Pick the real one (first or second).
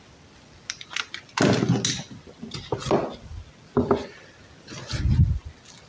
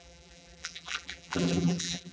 first